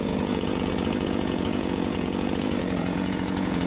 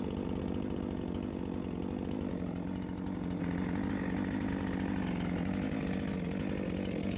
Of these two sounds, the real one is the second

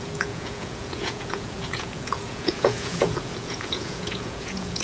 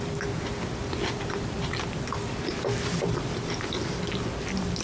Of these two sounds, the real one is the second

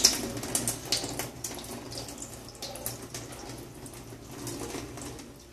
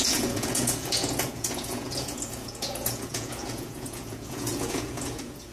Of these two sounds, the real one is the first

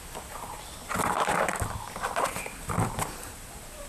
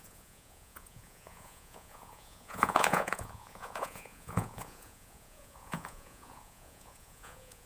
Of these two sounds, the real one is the first